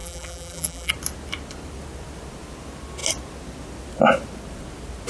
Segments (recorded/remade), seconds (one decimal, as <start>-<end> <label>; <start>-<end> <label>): 0.0-0.9 remade; 0.9-5.1 recorded